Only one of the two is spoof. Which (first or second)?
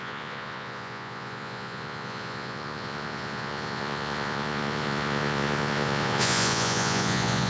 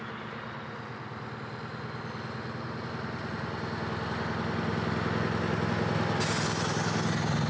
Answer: first